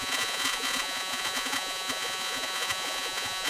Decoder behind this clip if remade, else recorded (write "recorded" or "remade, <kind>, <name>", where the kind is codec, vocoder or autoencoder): remade, vocoder, Vocos